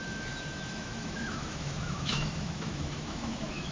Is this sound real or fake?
fake